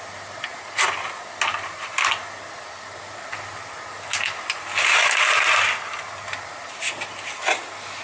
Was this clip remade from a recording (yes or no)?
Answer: no